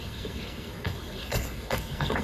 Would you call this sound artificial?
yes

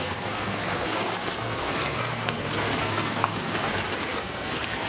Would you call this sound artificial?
yes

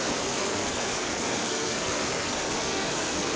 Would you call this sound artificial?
yes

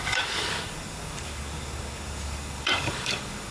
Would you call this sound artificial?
yes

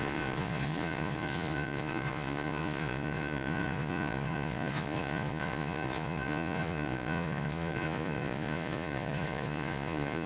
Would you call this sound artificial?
yes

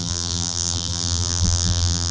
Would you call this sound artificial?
yes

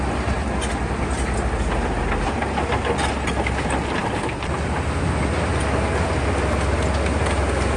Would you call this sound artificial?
no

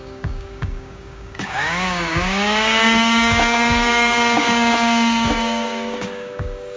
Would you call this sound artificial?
yes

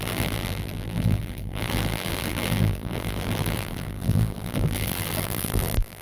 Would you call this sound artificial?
yes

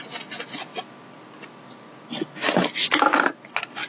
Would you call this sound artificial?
no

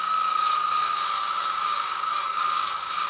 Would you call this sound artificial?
yes